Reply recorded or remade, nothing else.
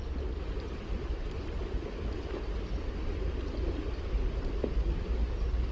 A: recorded